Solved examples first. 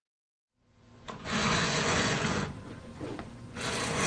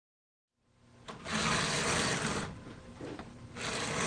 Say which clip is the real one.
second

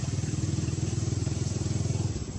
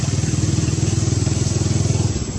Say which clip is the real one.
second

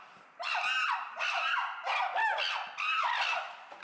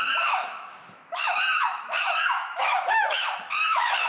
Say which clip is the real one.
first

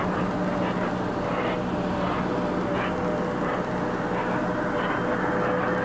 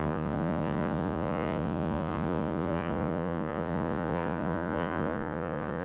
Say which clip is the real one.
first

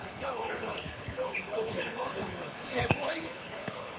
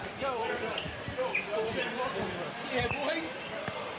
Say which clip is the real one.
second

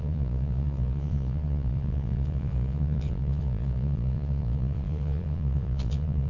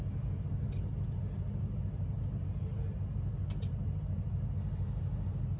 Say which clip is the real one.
second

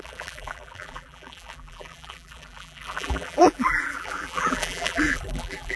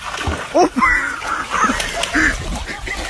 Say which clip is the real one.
second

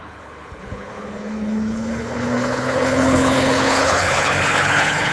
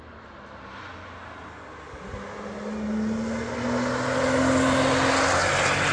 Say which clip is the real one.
second